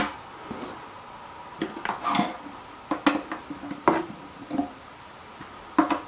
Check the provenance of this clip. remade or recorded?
recorded